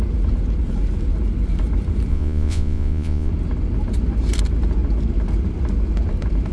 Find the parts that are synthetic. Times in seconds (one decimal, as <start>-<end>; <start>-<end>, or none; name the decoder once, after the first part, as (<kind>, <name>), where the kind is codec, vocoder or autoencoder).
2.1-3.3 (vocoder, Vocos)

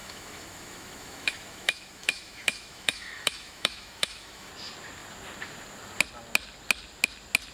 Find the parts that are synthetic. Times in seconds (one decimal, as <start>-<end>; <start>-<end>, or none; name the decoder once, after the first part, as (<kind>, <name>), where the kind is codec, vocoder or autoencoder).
0.0-4.5 (autoencoder, DAC-VAE)

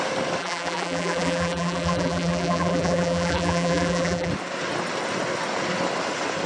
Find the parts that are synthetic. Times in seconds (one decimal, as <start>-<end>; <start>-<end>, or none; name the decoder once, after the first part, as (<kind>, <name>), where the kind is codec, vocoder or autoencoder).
0.4-4.3 (vocoder, BigVGAN v2)

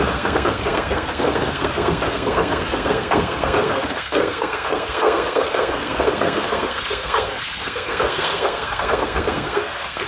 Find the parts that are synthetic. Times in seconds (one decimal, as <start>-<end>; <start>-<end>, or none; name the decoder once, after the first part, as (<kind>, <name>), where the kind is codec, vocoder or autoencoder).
0.0-10.1 (codec, SNAC)

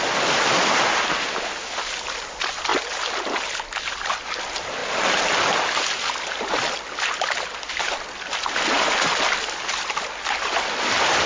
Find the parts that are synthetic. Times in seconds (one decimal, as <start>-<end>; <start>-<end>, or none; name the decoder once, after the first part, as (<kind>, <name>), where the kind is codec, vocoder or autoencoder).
none